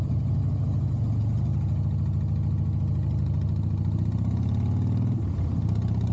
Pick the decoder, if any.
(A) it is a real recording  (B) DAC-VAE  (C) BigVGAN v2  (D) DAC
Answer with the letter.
A